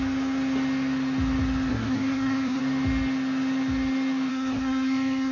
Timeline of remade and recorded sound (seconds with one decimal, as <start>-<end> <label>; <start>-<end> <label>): 0.0-1.7 recorded; 1.7-2.6 remade; 2.6-4.3 recorded; 4.3-5.3 remade